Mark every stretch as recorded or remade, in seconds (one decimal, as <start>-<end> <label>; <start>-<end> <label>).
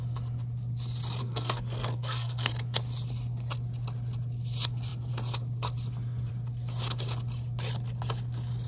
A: 0.0-1.2 recorded; 1.2-2.5 remade; 2.5-8.7 recorded